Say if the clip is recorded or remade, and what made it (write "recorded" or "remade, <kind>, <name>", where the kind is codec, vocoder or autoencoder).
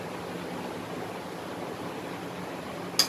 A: recorded